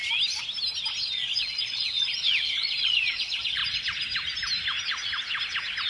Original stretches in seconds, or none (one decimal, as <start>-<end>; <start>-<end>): 0.0-1.1; 3.6-5.9